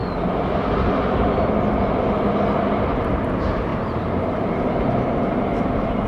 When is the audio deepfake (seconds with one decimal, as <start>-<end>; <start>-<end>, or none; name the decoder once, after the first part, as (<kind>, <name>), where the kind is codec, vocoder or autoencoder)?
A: 3.2-6.1 (vocoder, BigVGAN v2)